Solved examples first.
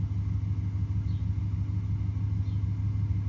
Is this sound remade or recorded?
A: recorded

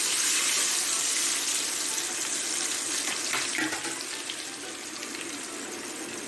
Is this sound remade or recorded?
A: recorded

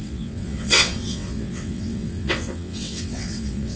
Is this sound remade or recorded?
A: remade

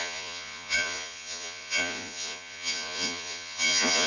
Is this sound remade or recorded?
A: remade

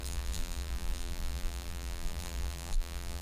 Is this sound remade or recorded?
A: remade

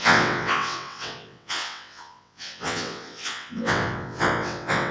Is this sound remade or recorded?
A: remade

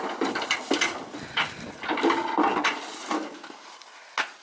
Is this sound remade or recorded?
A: recorded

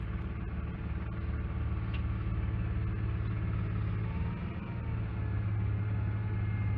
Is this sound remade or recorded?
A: recorded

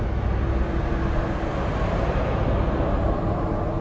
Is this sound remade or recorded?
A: recorded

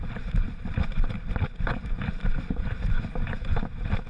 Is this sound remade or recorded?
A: remade